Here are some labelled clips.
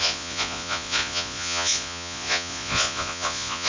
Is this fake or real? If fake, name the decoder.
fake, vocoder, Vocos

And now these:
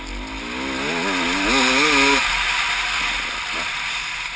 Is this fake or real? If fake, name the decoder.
real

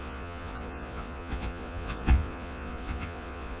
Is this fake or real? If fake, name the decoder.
fake, vocoder, Vocos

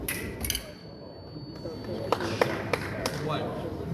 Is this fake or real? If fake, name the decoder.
real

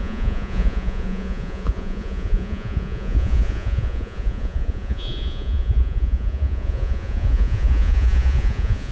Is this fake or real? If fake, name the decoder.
fake, vocoder, Vocos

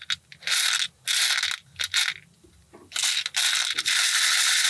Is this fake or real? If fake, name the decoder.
real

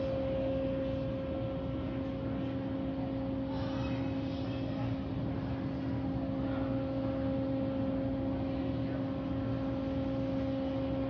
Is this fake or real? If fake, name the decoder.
real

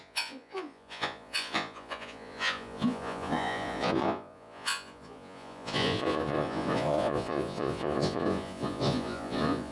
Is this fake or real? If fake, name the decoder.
fake, vocoder, Vocos